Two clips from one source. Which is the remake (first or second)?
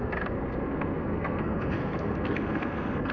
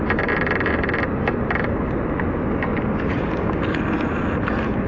first